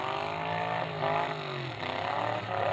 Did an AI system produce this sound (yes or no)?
no